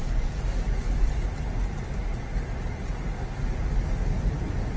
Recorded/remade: recorded